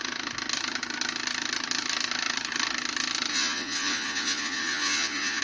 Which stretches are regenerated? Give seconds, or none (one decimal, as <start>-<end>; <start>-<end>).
3.3-5.4